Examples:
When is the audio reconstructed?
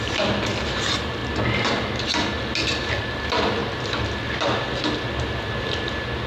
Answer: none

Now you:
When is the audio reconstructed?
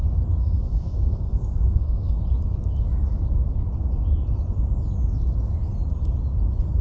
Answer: 0.4-2.2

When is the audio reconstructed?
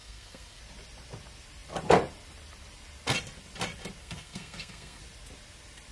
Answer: 0.0-0.6; 4.0-5.0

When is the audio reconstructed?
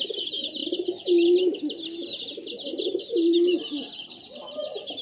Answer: none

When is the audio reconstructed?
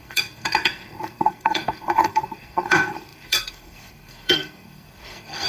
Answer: 0.0-5.5